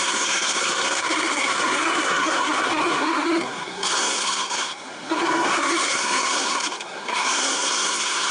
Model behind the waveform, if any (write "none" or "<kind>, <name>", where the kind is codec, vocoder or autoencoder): codec, SNAC